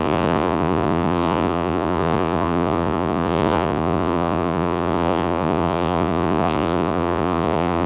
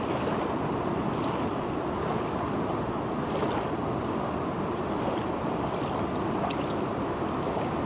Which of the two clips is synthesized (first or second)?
first